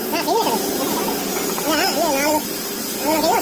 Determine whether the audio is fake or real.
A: real